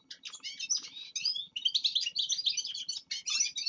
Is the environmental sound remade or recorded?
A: recorded